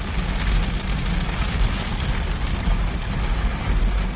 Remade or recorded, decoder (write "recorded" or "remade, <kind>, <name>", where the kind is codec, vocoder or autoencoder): recorded